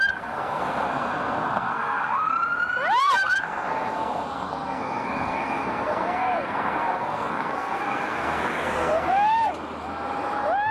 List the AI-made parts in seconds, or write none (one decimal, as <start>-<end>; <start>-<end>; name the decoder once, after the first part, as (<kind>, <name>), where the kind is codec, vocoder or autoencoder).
0.0-2.3 (codec, SNAC); 3.0-9.5